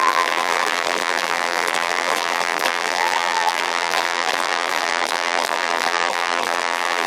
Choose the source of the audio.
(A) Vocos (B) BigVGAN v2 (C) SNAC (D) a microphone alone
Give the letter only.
B